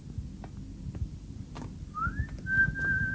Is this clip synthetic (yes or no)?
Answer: no